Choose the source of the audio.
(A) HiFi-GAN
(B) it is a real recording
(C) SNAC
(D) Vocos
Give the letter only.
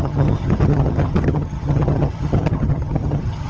A